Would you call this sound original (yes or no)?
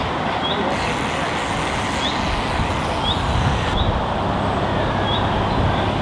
yes